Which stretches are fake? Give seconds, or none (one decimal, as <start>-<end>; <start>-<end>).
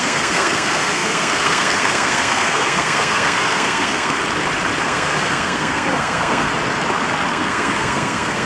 0.0-4.2; 4.8-6.5; 7.3-8.5